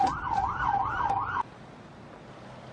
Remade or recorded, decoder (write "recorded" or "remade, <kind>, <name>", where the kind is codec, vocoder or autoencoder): remade, vocoder, BigVGAN v2